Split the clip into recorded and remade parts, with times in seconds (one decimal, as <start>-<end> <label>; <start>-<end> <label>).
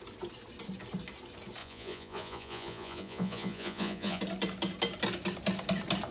0.0-1.6 recorded; 1.6-4.2 remade; 4.2-6.1 recorded